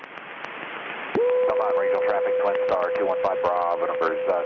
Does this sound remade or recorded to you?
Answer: recorded